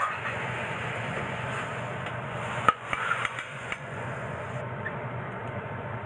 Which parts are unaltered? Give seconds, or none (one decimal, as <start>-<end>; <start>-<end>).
none